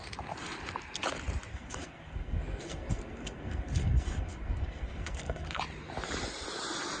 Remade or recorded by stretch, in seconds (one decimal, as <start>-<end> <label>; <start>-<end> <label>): 0.0-1.5 recorded; 1.5-5.6 remade; 5.6-7.0 recorded